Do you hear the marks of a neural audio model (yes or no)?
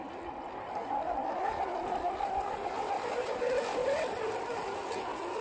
no